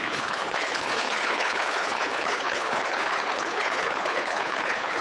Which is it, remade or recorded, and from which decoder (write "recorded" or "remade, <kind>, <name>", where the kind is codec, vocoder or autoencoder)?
remade, codec, HILCodec